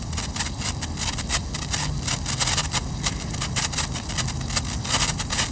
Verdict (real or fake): real